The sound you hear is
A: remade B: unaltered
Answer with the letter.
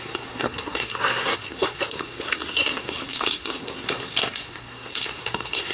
A